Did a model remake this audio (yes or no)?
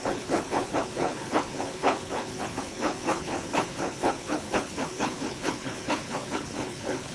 yes